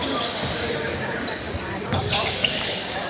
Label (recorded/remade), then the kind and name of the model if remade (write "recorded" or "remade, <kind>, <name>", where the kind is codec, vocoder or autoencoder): remade, codec, DAC